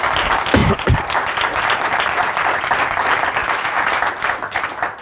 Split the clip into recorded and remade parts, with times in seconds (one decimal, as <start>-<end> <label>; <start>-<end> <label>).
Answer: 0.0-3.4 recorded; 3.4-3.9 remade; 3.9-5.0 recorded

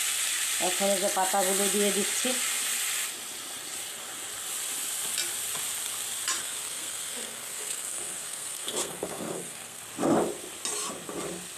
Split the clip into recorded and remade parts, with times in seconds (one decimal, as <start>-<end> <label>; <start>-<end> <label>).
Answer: 0.0-6.4 recorded; 6.4-9.8 remade; 9.8-11.6 recorded

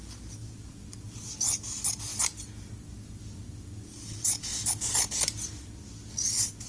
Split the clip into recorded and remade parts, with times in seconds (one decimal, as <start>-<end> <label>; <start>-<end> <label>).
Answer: 0.0-0.4 recorded; 0.4-1.3 remade; 1.3-2.1 recorded; 2.1-3.2 remade; 3.2-4.5 recorded; 4.5-5.6 remade; 5.6-6.7 recorded

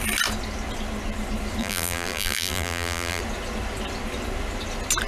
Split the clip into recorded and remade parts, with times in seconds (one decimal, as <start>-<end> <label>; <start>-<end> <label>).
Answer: 0.0-1.6 recorded; 1.6-3.2 remade; 3.2-5.1 recorded

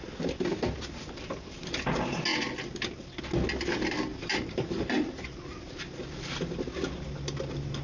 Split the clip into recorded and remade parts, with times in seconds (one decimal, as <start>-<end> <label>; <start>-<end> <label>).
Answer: 0.0-4.1 recorded; 4.1-5.6 remade; 5.6-7.8 recorded